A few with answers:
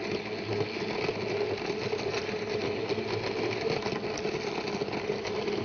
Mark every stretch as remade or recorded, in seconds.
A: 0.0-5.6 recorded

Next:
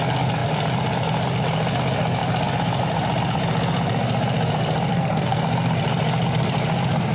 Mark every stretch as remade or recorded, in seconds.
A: 0.0-4.9 recorded; 4.9-5.4 remade; 5.4-7.1 recorded

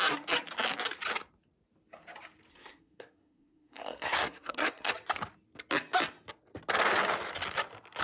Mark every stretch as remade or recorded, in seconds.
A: 0.0-2.5 recorded; 2.5-4.9 remade; 4.9-8.0 recorded

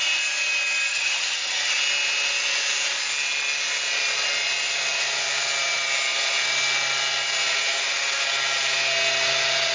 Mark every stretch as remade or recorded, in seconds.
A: 0.0-0.9 recorded; 0.9-1.8 remade; 1.8-9.7 recorded